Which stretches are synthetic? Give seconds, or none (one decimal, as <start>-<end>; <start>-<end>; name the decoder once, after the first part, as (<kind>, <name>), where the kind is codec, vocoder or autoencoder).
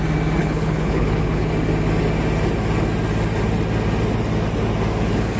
0.4-1.5 (codec, HILCodec)